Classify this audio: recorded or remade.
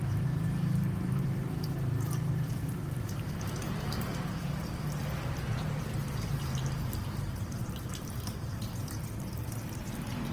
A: remade